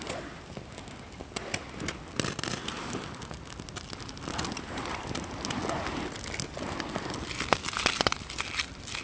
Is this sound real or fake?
real